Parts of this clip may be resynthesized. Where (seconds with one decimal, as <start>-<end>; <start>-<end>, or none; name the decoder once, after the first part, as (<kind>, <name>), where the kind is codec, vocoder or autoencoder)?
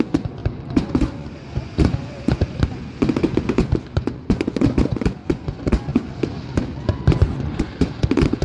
0.0-8.4 (vocoder, Vocos)